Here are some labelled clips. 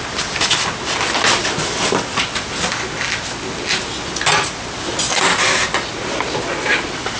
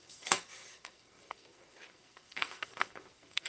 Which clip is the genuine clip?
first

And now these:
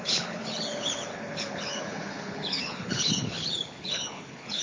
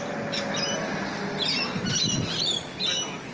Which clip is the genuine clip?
second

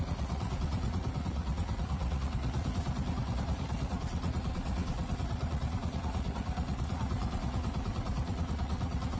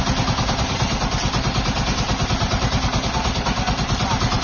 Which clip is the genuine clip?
second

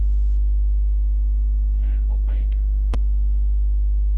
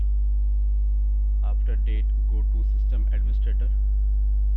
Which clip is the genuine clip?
second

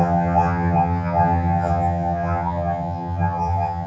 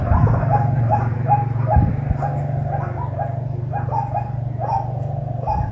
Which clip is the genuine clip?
second